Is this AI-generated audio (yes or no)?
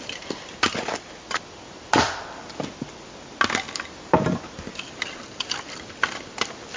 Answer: no